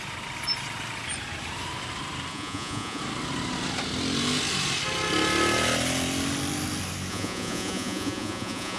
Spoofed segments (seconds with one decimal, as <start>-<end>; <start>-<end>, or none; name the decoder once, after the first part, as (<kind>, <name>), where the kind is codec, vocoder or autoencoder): 2.3-3.0 (vocoder, Vocos); 7.1-8.8